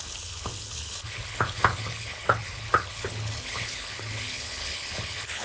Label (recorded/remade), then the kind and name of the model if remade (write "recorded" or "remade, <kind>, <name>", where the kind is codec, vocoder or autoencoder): remade, codec, HILCodec